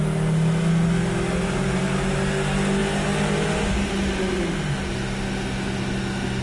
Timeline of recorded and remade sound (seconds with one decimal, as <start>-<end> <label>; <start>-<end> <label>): 0.0-6.4 recorded